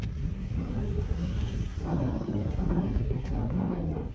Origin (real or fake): fake